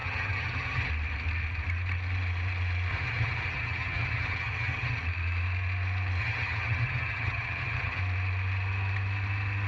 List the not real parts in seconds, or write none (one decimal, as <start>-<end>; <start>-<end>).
0.0-0.9; 2.9-5.0; 6.2-8.0